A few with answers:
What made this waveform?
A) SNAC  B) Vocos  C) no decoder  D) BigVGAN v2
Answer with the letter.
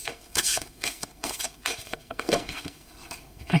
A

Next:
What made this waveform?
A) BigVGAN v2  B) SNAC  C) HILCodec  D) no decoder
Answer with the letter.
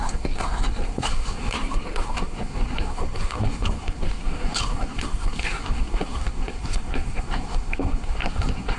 B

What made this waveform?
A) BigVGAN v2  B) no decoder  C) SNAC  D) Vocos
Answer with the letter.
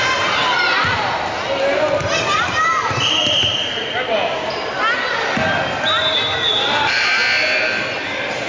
B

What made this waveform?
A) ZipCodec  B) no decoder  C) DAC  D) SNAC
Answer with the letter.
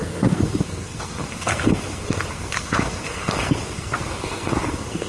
D